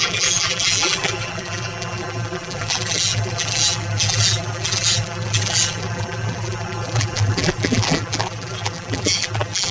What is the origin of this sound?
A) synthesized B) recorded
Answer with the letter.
A